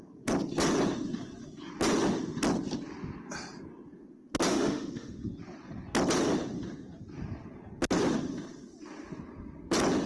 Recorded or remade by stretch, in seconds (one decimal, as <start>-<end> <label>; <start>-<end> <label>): 0.0-4.5 recorded; 4.5-5.2 remade; 5.2-10.1 recorded